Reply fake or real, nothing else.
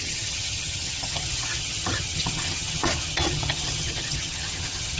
fake